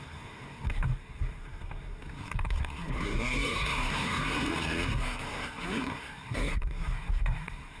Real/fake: fake